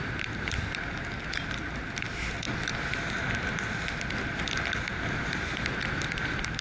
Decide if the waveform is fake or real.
real